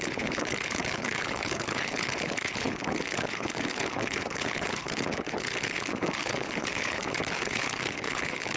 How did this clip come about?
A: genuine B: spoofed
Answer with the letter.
B